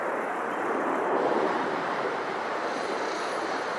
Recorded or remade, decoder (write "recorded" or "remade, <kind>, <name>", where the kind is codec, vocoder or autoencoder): remade, vocoder, BigVGAN v2